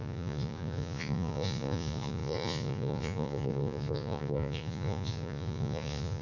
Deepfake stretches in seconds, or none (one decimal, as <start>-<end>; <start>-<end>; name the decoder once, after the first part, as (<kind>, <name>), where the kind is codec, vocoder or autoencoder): 0.0-6.2 (vocoder, Vocos)

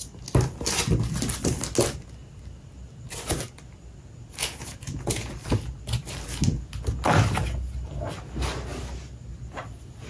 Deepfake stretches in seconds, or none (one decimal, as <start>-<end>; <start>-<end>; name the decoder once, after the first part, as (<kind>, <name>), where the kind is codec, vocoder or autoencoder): 4.4-5.3 (vocoder, Vocos)

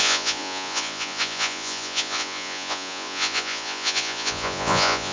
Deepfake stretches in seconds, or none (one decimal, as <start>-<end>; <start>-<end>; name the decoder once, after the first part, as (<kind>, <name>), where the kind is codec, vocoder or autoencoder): 0.0-5.1 (vocoder, Vocos)

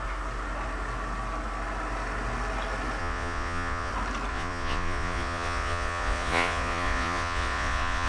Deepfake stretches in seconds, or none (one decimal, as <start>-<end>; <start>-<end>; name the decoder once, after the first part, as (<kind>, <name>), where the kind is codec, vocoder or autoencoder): 3.0-3.9 (vocoder, Vocos); 4.3-8.1